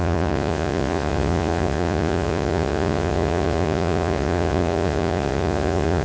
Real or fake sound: fake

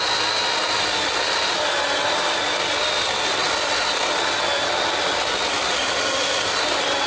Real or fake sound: real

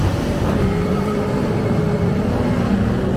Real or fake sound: fake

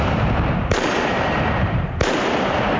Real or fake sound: fake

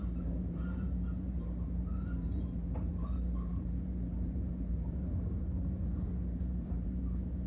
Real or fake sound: fake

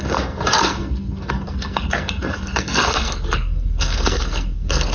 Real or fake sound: fake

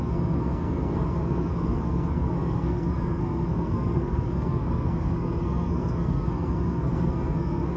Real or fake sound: fake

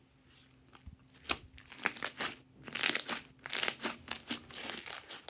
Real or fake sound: real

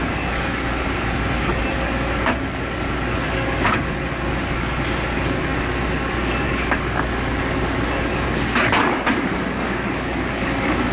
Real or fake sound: fake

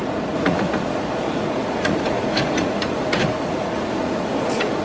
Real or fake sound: fake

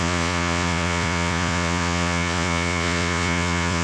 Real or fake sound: fake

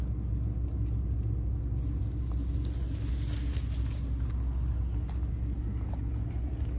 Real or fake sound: real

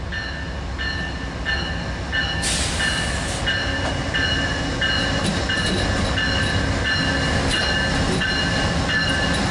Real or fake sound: real